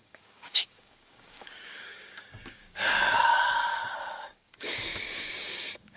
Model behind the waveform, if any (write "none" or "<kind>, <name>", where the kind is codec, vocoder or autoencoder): codec, DAC